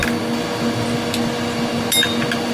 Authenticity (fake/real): real